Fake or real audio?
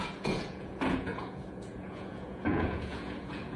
fake